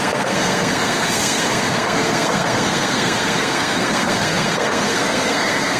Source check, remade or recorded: remade